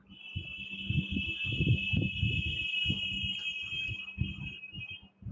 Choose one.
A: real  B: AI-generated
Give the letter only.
A